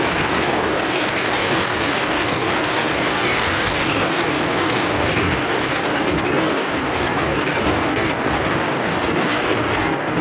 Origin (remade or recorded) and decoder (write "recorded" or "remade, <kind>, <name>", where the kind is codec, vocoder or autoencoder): remade, codec, DAC